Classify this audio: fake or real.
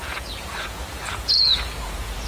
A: fake